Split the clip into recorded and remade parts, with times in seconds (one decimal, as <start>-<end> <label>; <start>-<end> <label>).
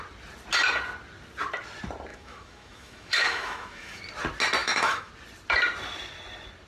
0.0-2.1 recorded; 2.1-4.0 remade; 4.0-4.6 recorded; 4.6-5.1 remade; 5.1-6.7 recorded